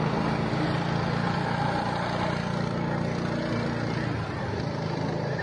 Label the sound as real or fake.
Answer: real